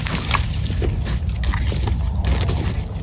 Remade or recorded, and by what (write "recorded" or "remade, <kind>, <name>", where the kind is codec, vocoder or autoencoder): recorded